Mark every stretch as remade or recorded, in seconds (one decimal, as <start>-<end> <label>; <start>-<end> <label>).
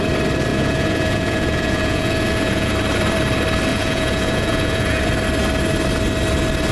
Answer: 0.0-0.5 recorded; 0.5-2.7 remade; 2.7-3.7 recorded; 3.7-5.0 remade; 5.0-6.7 recorded